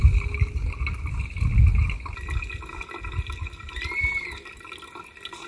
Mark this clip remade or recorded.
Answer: recorded